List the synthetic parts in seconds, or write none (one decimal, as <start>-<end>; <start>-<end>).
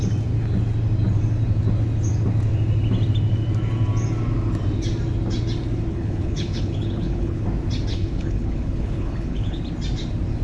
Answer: 5.9-7.4; 7.9-9.6